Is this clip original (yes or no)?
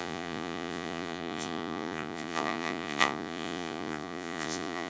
no